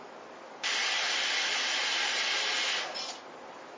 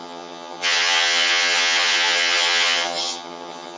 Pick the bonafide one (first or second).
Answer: first